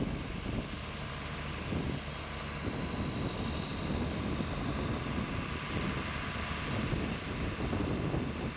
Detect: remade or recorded recorded